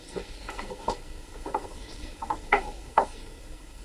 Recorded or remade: remade